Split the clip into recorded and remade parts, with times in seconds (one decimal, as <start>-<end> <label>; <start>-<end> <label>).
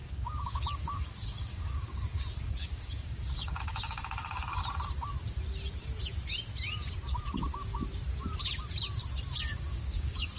0.0-4.6 remade; 4.6-9.4 recorded; 9.4-10.4 remade